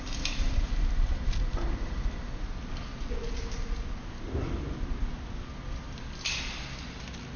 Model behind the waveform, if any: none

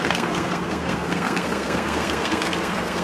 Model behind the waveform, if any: codec, SNAC